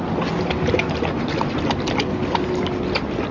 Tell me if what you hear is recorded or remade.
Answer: recorded